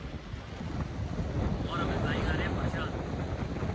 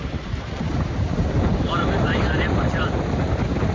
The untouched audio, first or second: first